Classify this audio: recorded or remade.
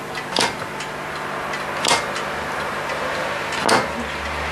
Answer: recorded